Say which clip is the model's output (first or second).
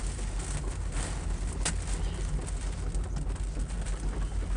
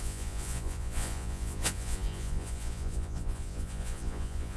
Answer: second